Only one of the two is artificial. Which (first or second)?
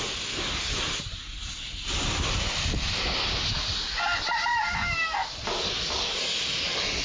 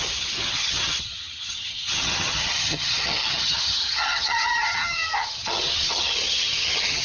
second